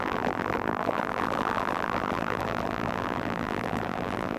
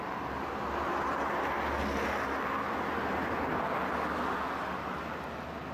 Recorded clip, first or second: second